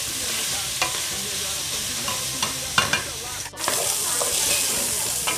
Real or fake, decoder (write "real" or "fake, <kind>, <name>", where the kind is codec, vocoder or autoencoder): real